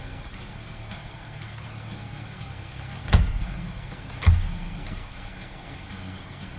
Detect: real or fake fake